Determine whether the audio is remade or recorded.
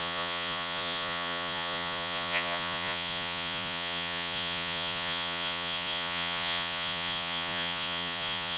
remade